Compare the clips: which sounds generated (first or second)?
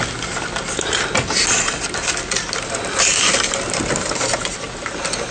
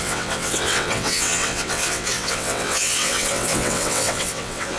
second